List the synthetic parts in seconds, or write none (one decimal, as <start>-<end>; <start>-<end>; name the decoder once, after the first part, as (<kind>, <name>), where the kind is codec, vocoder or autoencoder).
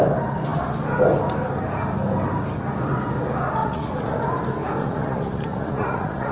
3.6-4.2 (vocoder, Vocos); 4.8-6.3